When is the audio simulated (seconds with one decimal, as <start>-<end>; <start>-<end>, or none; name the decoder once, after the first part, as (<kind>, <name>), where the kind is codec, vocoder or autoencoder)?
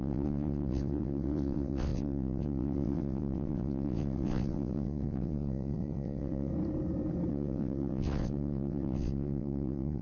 0.0-6.5 (vocoder, WaveNeXt); 7.3-10.0